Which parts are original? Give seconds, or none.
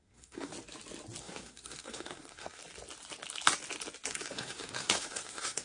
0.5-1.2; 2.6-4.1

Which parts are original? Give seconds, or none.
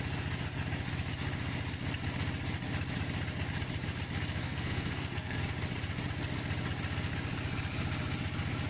0.0-4.4; 5.4-8.7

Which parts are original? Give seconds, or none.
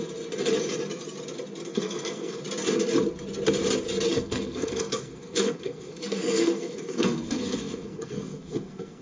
0.0-1.7; 2.4-4.1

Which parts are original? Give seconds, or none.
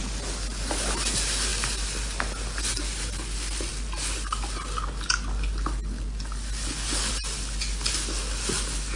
0.0-9.0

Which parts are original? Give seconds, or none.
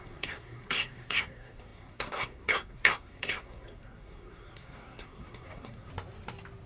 5.9-6.7